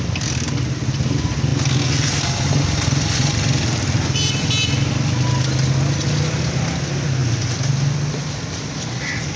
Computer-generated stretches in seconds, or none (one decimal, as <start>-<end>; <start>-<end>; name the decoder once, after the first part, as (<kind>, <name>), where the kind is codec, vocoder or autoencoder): none